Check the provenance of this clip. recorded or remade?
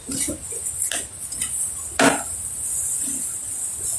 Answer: recorded